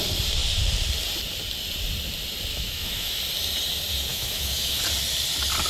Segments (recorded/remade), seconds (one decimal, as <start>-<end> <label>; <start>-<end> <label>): 0.0-2.5 recorded; 2.5-3.2 remade; 3.2-4.1 recorded; 4.1-4.8 remade; 4.8-5.7 recorded